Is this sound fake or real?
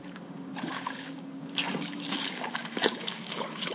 fake